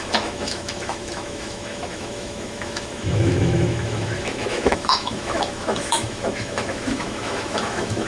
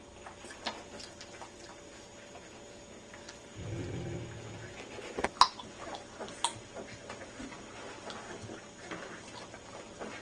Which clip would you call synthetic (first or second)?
first